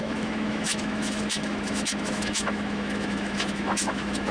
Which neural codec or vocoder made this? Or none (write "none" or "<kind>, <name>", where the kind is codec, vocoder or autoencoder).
autoencoder, DAC-VAE